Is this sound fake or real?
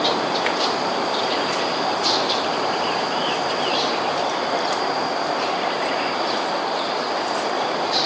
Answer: fake